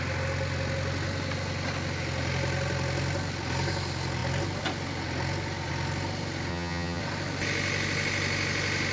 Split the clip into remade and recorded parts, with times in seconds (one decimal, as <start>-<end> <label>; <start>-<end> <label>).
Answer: 0.0-6.5 recorded; 6.5-7.0 remade; 7.0-8.9 recorded